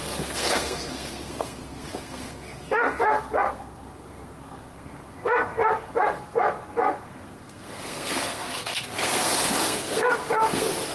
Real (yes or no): no